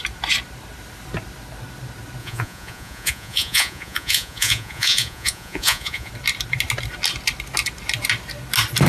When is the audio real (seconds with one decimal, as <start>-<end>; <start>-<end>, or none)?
0.0-2.2; 6.1-8.9